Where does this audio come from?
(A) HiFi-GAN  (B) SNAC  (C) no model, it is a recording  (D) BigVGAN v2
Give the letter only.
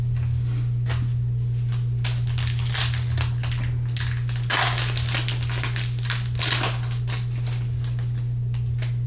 C